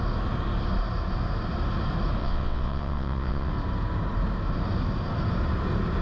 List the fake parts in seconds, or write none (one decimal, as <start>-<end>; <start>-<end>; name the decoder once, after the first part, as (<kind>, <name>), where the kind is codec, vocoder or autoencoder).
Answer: 2.2-3.5 (vocoder, WaveNeXt)